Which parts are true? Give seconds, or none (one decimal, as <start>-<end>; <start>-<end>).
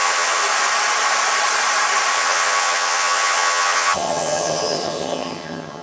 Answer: 0.4-2.1